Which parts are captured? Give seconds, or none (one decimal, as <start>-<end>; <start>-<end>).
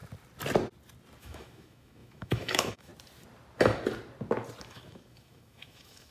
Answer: 0.0-1.2; 2.9-4.7